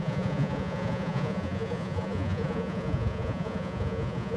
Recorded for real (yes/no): no